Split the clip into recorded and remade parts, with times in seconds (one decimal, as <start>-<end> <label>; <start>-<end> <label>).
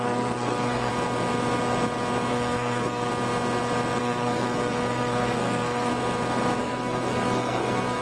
0.0-0.9 remade; 0.9-2.3 recorded; 2.3-3.1 remade; 3.1-4.0 recorded; 4.0-5.9 remade; 5.9-6.6 recorded; 6.6-8.0 remade